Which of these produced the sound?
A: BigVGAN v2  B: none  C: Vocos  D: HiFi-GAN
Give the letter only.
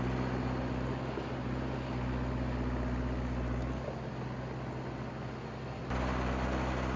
B